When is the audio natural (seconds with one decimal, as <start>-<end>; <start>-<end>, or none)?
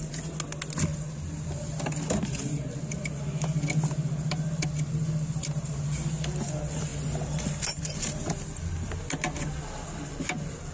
0.0-10.7